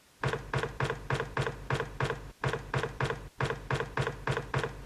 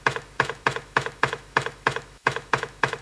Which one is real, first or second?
first